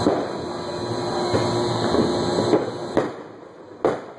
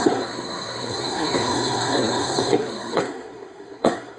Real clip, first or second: first